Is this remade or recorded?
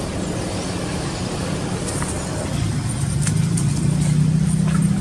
recorded